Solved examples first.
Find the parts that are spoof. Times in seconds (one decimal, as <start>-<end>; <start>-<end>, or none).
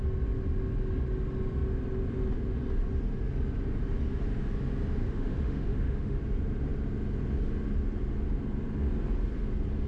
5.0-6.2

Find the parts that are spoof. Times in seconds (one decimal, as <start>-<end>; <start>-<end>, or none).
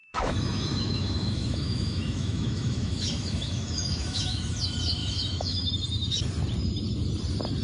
0.0-4.6; 5.0-5.7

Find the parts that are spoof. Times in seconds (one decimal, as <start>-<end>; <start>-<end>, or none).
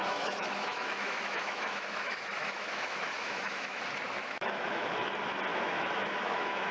0.0-3.8; 4.2-5.1; 5.5-6.7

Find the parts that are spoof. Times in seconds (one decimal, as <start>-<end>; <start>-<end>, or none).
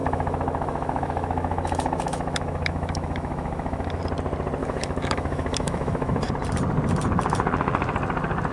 0.0-4.0; 4.6-6.3